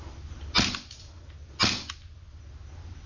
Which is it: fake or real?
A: real